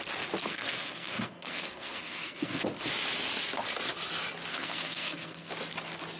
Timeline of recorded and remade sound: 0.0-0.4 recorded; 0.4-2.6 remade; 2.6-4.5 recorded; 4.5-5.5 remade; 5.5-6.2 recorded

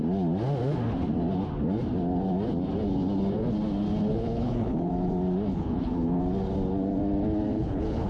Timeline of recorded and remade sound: 0.0-4.1 recorded; 4.1-4.9 remade; 4.9-5.5 recorded; 5.5-6.2 remade; 6.2-7.5 recorded; 7.5-8.1 remade

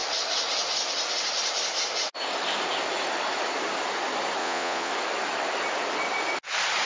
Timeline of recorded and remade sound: 0.0-4.4 recorded; 4.4-4.9 remade; 4.9-6.9 recorded